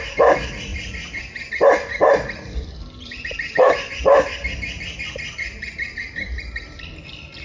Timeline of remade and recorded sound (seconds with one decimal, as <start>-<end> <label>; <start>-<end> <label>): 0.0-7.4 remade